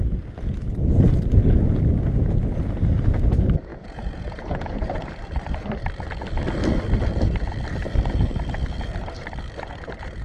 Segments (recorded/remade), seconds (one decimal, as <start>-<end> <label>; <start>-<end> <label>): 0.0-3.7 recorded; 3.7-5.1 remade; 5.1-10.2 recorded